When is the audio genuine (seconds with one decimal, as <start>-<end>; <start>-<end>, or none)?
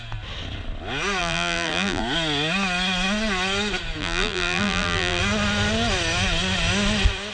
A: 0.0-1.2; 2.0-4.0; 5.2-7.3